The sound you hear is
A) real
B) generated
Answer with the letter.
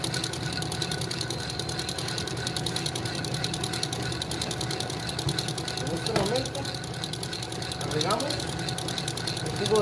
A